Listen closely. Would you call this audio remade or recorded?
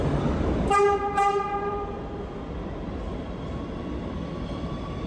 recorded